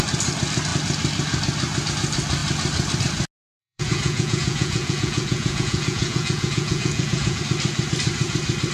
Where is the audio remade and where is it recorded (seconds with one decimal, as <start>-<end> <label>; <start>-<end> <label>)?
0.0-3.6 recorded; 3.6-7.4 remade; 7.4-8.7 recorded